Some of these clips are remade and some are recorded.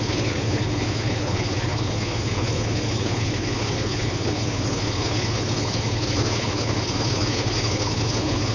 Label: remade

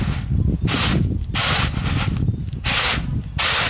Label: recorded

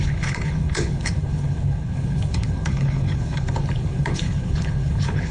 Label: remade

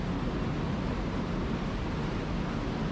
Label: recorded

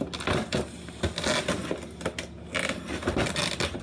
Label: recorded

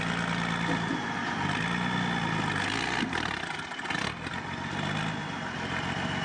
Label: recorded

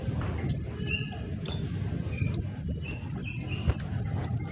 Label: recorded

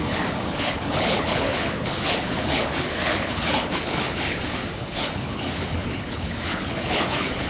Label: remade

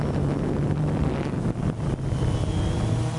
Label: recorded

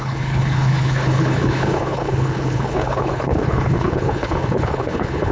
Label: remade